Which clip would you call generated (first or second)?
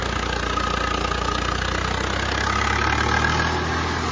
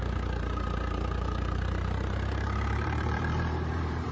second